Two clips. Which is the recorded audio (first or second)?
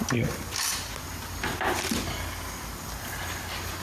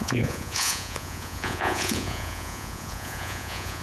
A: first